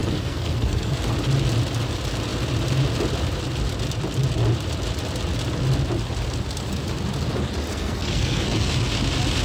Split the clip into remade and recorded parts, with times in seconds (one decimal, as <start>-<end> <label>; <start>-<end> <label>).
0.0-1.1 remade; 1.1-7.7 recorded; 7.7-8.7 remade; 8.7-9.4 recorded